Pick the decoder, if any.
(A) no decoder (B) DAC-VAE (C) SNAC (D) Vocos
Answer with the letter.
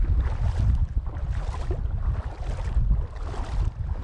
A